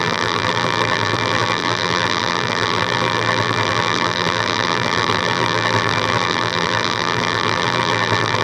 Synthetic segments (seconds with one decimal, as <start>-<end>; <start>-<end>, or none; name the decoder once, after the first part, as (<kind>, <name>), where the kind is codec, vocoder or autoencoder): 0.0-8.4 (vocoder, BigVGAN v2)